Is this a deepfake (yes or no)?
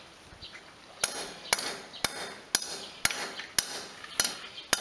no